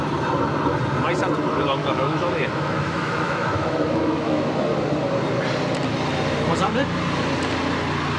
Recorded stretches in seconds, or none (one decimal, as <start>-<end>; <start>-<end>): 0.0-1.8; 4.5-8.2